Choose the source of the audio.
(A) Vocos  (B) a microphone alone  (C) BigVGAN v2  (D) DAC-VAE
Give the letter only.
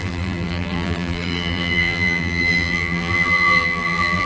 C